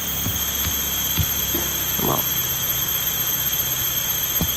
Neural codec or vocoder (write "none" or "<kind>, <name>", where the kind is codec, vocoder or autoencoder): none